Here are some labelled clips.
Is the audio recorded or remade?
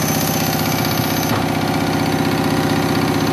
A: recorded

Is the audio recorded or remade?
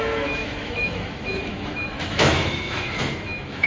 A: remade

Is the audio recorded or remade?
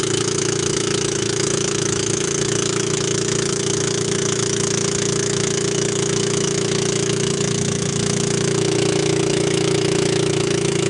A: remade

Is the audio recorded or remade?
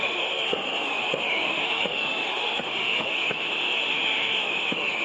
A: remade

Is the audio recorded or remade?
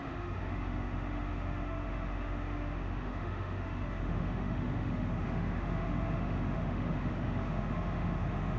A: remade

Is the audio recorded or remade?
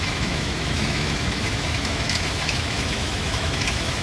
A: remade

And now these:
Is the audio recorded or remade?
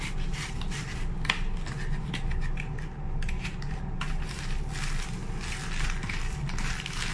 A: recorded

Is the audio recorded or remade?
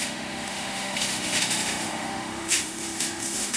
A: remade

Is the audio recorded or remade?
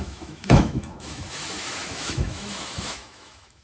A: remade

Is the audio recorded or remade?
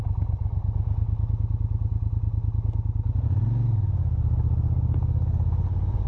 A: recorded